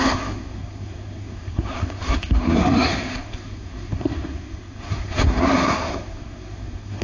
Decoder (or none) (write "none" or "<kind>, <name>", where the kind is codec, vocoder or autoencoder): codec, SNAC